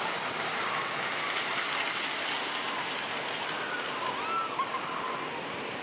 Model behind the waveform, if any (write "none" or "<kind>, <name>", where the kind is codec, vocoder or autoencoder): none